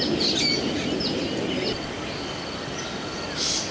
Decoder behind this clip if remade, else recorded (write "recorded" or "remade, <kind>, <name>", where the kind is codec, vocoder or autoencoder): recorded